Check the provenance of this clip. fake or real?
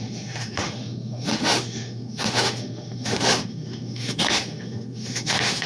fake